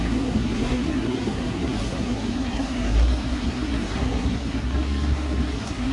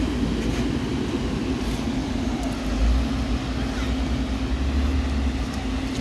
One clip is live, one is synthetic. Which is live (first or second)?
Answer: second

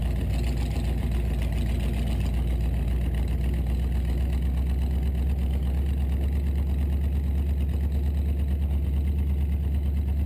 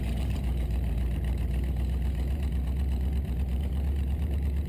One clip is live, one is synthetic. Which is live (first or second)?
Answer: first